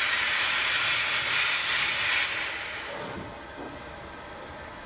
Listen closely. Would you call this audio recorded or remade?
recorded